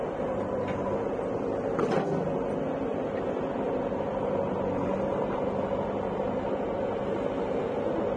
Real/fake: real